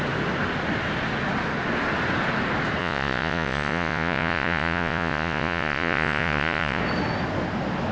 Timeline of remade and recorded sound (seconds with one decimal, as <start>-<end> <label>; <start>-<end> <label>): 0.0-2.8 recorded; 2.8-6.8 remade; 6.8-7.9 recorded